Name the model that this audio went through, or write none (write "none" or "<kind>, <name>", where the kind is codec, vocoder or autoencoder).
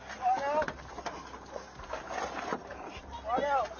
none